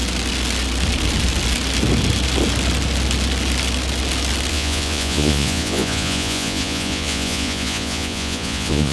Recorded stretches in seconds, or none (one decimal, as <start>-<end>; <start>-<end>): 0.0-4.5